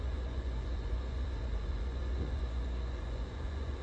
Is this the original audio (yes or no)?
no